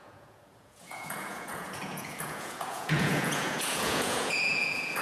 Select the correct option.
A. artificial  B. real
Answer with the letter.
A